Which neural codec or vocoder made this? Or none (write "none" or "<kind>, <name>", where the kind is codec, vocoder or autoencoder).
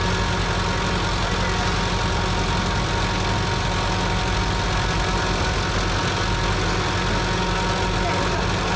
none